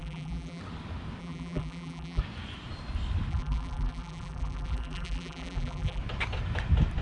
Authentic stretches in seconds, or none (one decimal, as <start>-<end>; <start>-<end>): 0.6-1.2; 2.2-3.3; 6.0-7.0